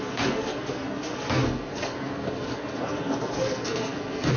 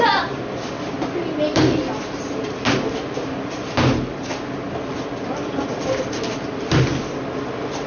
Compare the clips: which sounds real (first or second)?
second